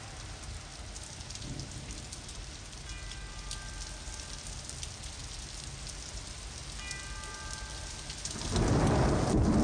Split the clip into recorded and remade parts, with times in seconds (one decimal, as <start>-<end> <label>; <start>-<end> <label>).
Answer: 0.0-9.6 recorded